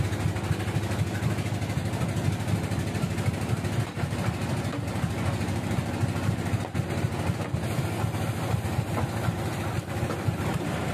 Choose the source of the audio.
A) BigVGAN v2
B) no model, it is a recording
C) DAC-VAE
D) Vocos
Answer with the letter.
B